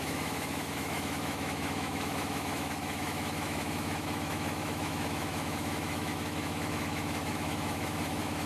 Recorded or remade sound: remade